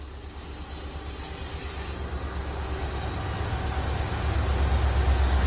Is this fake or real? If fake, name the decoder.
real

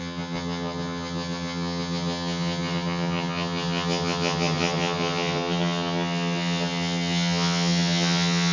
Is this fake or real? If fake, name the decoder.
fake, vocoder, HiFi-GAN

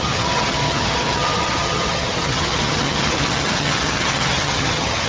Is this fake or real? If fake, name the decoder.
fake, vocoder, HiFi-GAN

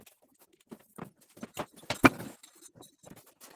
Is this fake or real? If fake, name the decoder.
fake, vocoder, BigVGAN v2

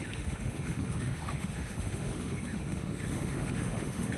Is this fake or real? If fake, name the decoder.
fake, autoencoder, DAC-VAE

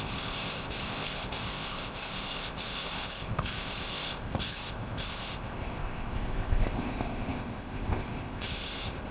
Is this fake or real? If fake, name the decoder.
fake, codec, ZipCodec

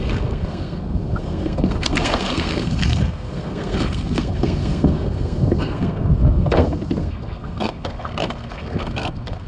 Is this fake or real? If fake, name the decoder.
fake, codec, SNAC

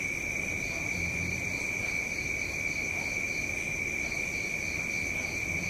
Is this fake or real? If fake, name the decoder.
real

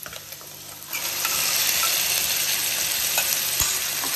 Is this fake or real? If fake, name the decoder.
real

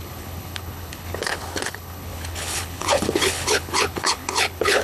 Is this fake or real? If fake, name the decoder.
fake, codec, HILCodec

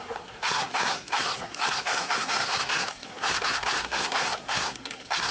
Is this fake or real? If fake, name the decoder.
fake, codec, SNAC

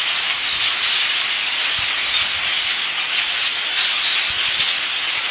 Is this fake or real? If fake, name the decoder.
real